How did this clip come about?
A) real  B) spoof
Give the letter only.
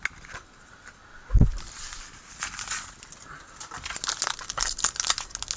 A